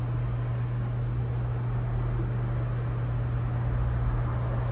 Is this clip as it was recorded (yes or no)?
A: yes